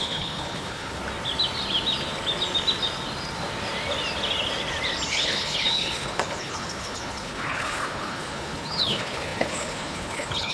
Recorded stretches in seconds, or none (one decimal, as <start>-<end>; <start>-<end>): 1.0-5.1